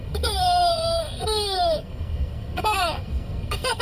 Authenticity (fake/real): fake